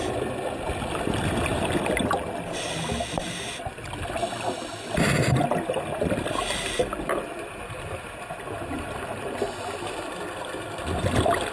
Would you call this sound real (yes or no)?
yes